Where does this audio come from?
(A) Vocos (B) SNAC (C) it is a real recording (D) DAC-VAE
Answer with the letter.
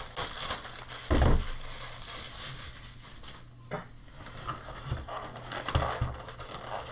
C